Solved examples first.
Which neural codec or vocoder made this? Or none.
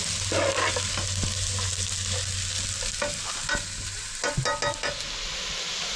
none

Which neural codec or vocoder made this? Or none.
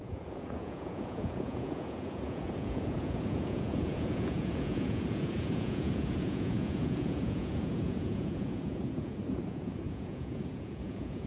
vocoder, Vocos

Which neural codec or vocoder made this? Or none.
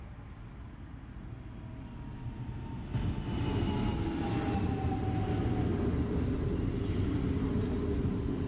none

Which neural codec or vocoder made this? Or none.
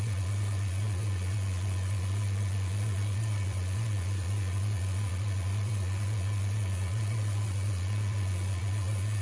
vocoder, Vocos